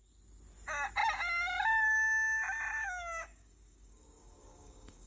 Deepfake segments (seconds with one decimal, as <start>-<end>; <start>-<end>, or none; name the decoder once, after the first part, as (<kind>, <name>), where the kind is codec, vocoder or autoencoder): 2.8-5.1 (codec, DAC)